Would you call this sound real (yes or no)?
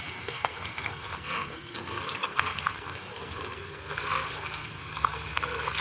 no